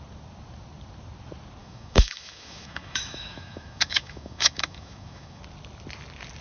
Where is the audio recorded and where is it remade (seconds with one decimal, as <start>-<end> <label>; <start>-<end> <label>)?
0.0-1.6 recorded; 1.6-5.4 remade; 5.4-6.4 recorded

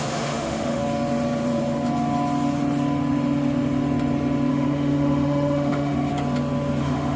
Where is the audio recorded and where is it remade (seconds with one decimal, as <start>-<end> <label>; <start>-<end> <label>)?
0.0-0.8 remade; 0.8-4.5 recorded; 4.5-6.1 remade; 6.1-6.8 recorded; 6.8-7.2 remade